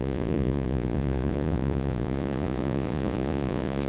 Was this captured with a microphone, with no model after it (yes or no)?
no